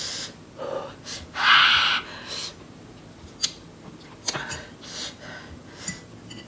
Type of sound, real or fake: real